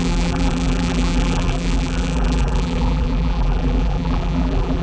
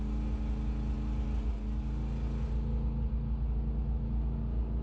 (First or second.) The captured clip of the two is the second